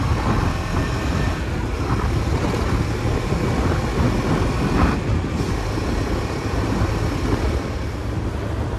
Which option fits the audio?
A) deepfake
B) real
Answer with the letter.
B